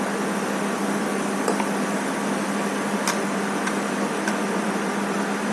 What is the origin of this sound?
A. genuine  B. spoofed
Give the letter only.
A